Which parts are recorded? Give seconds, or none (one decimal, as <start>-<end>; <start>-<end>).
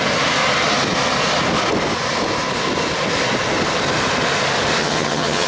0.0-4.8